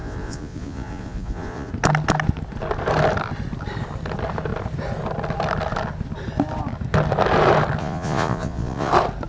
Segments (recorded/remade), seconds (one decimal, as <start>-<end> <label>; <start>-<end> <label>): 0.0-1.7 remade; 1.7-7.8 recorded; 7.8-8.9 remade; 8.9-9.3 recorded